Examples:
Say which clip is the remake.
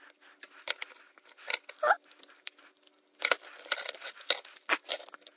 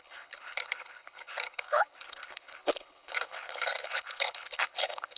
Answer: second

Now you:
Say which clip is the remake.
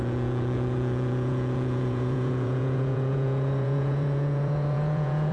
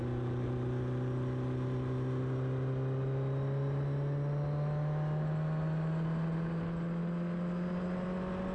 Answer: first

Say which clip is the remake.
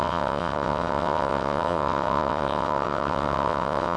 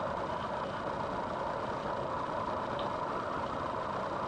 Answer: first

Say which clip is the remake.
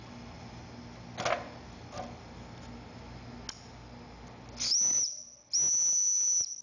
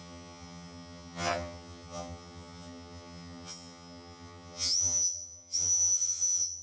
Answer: second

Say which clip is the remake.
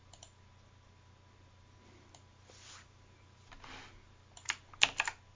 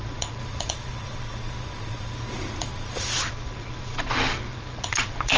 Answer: second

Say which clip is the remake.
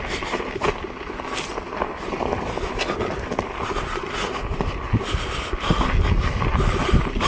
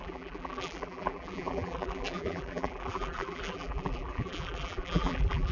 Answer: second